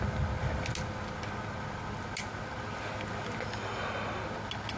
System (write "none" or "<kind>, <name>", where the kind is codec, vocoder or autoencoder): none